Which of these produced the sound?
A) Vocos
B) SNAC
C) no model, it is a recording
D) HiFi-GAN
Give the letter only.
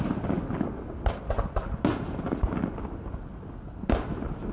C